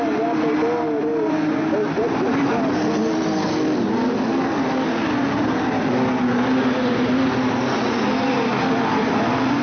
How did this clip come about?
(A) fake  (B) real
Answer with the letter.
B